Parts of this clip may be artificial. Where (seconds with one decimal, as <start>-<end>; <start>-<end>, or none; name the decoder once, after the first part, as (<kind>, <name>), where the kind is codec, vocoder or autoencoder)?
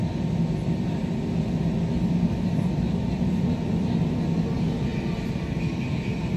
none